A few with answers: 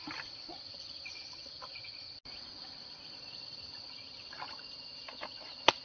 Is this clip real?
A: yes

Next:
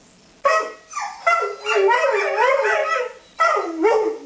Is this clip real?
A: yes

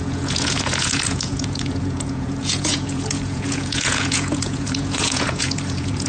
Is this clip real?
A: no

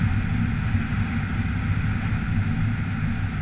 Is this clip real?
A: yes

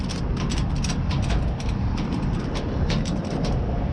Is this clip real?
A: yes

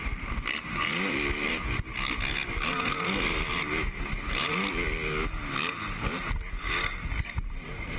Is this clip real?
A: yes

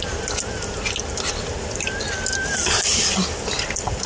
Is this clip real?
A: yes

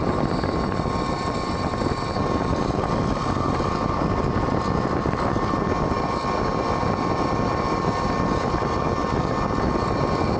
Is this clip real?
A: yes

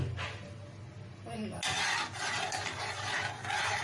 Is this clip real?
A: yes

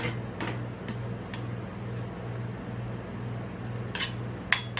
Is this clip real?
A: yes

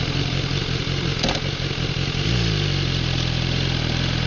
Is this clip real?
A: yes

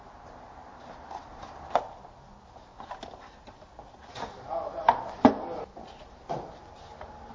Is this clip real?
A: yes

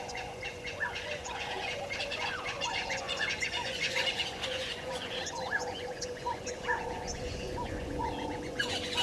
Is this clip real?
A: no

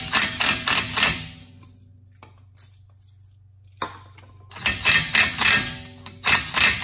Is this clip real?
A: yes